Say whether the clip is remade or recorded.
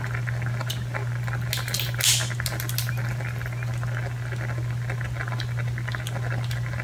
recorded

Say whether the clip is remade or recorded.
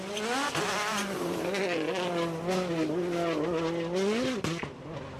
recorded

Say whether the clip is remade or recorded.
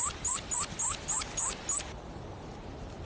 recorded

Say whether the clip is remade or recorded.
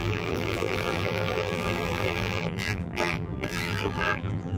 remade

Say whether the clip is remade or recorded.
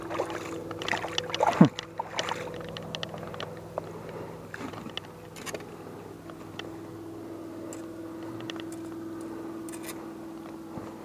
recorded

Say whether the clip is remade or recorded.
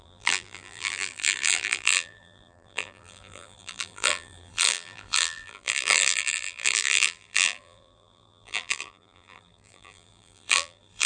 remade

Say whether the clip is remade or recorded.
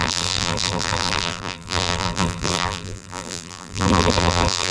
remade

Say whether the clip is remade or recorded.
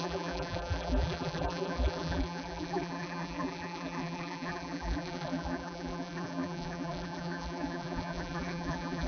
remade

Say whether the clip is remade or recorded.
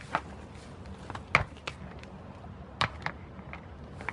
recorded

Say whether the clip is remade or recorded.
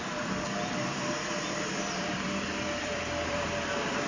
remade